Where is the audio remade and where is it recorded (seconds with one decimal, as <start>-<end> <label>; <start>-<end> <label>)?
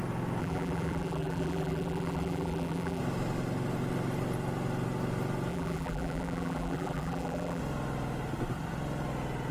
0.0-0.4 recorded; 0.4-3.0 remade; 3.0-5.5 recorded; 5.5-7.6 remade; 7.6-9.5 recorded